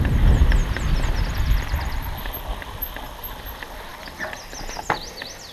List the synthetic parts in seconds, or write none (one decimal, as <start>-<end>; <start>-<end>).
0.6-3.4